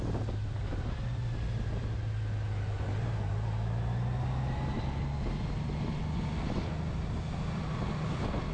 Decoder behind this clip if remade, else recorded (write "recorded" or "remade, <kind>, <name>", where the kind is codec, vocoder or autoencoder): recorded